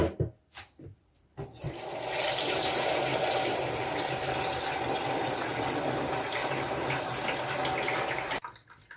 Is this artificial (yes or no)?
no